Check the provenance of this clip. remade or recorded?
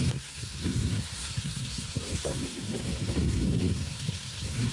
remade